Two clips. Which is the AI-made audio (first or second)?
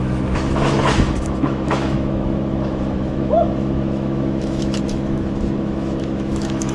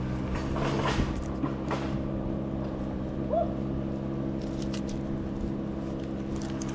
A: first